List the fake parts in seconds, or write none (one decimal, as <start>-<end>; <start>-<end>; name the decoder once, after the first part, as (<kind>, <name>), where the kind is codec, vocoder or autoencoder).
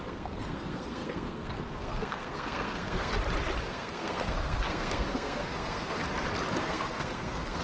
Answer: 0.0-3.1 (codec, SNAC); 3.6-6.0; 6.6-7.6